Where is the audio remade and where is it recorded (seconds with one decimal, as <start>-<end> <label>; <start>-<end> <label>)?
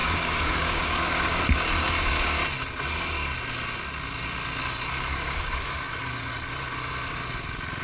0.0-2.4 remade; 2.4-5.0 recorded; 5.0-5.9 remade; 5.9-7.8 recorded